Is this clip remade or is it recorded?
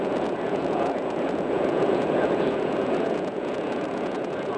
remade